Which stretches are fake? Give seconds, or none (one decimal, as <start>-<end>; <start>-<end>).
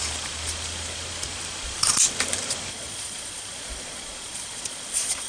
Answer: 2.7-5.3